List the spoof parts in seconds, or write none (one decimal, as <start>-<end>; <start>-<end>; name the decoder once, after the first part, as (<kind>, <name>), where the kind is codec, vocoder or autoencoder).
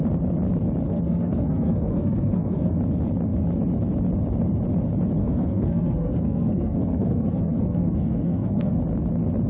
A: 0.9-2.7 (codec, SNAC); 5.2-8.8